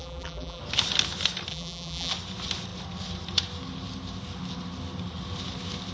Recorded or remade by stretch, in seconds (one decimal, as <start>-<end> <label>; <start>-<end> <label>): 0.0-0.6 remade; 0.6-1.5 recorded; 1.5-2.1 remade; 2.1-5.9 recorded

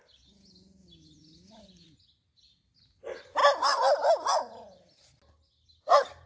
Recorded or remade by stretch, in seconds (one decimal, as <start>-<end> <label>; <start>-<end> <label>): 0.0-6.3 recorded

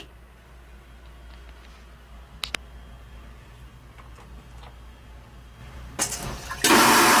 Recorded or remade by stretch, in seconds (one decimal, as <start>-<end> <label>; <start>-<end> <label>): 0.0-5.6 recorded; 5.6-6.7 remade; 6.7-7.2 recorded